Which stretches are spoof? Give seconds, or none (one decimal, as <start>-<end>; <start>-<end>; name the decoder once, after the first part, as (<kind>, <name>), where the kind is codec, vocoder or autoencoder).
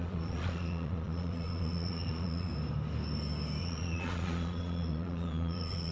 0.0-2.5 (vocoder, Vocos); 3.6-5.9